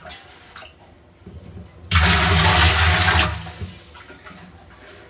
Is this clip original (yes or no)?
yes